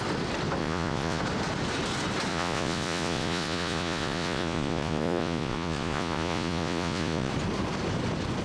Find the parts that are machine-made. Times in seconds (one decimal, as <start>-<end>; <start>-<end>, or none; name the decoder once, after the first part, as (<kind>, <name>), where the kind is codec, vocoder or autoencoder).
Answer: 0.6-1.2 (vocoder, Vocos); 2.3-7.3

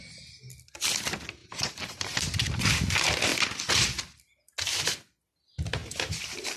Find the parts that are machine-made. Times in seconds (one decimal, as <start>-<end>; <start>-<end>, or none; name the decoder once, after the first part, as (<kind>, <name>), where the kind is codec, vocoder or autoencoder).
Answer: 1.4-2.6 (vocoder, BigVGAN v2); 5.8-6.6

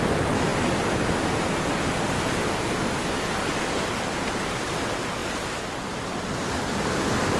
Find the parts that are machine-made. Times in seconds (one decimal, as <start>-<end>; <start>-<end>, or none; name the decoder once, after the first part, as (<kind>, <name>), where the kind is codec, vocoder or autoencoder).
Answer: none

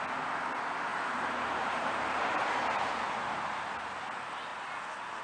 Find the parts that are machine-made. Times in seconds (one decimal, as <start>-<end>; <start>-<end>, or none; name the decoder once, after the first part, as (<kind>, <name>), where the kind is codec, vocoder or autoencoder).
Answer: 0.9-3.0 (vocoder, BigVGAN v2)

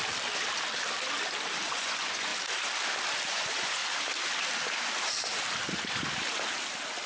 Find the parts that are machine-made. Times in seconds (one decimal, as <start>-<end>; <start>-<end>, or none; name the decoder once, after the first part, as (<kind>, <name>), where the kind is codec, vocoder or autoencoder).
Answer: 1.7-2.3 (vocoder, Vocos); 3.3-3.8